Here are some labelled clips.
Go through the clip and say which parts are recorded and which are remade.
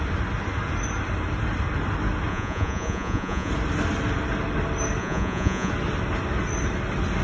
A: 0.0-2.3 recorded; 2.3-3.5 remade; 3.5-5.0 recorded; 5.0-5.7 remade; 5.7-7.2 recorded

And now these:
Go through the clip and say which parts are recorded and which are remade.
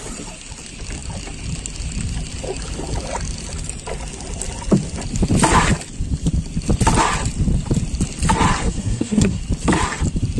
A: 0.0-8.6 recorded; 8.6-9.4 remade; 9.4-10.4 recorded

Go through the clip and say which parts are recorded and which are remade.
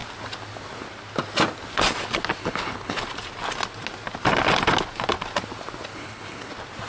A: 0.0-2.4 recorded; 2.4-3.0 remade; 3.0-5.9 recorded; 5.9-6.5 remade; 6.5-6.9 recorded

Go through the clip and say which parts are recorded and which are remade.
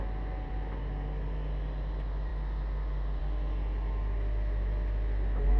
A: 0.0-5.6 recorded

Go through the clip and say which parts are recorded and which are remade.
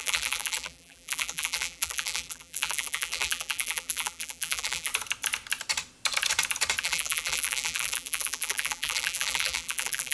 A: 0.0-4.9 remade; 4.9-6.8 recorded; 6.8-10.1 remade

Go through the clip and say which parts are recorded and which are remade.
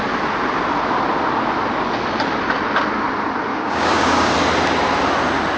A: 0.0-3.5 recorded; 3.5-4.3 remade; 4.3-5.6 recorded